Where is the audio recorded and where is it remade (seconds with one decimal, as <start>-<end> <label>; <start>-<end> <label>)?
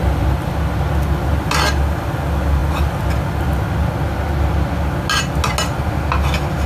0.0-0.5 remade; 0.5-6.7 recorded